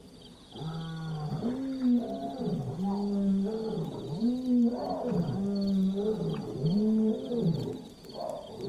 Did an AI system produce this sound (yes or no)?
no